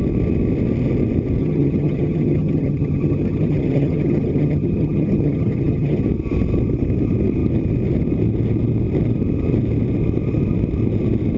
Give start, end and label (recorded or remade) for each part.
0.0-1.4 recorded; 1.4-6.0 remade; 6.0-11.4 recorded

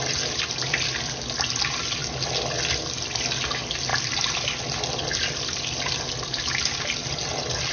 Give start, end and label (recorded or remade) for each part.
0.0-7.7 recorded

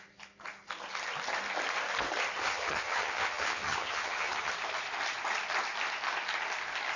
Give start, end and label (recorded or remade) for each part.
0.0-2.4 recorded; 2.4-4.5 remade; 4.5-7.0 recorded